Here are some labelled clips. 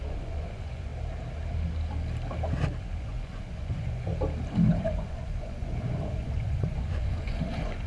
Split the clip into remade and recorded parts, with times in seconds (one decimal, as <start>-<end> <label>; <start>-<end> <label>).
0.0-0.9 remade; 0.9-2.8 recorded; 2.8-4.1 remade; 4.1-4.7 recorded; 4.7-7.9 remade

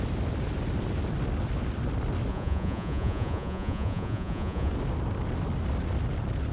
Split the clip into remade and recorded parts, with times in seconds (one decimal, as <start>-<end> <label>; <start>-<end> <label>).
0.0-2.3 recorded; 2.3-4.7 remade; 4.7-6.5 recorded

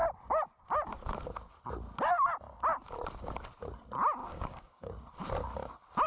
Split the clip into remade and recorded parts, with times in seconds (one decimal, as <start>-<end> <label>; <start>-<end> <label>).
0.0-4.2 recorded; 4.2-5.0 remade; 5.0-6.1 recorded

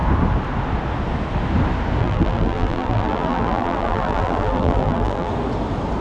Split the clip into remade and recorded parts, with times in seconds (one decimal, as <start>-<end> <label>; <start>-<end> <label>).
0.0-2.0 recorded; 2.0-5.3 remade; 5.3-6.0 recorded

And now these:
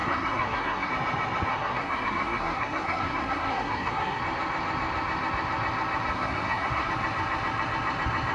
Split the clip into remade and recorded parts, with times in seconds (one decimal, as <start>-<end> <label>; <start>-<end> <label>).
0.0-0.9 remade; 0.9-1.5 recorded; 1.5-4.2 remade; 4.2-6.1 recorded; 6.1-6.9 remade; 6.9-8.3 recorded

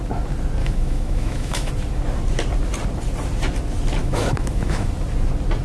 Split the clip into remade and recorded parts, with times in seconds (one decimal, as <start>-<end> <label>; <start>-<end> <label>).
0.0-0.6 recorded; 0.6-1.7 remade; 1.7-4.0 recorded; 4.0-4.9 remade; 4.9-5.6 recorded